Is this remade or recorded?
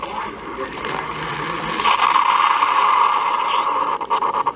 recorded